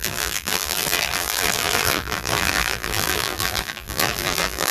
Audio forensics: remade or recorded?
remade